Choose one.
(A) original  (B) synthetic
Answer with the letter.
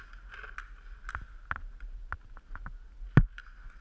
A